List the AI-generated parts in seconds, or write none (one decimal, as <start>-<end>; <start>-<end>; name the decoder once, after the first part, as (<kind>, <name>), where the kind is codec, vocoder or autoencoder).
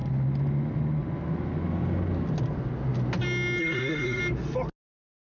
3.6-4.2 (codec, SNAC)